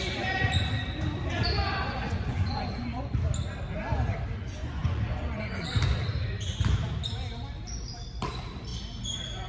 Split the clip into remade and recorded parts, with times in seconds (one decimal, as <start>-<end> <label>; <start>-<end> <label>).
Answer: 0.0-1.6 recorded; 1.6-3.1 remade; 3.1-4.6 recorded; 4.6-5.8 remade; 5.8-9.5 recorded